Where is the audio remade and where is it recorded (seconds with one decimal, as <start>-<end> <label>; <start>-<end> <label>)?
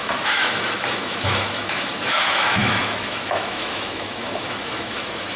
0.0-5.4 remade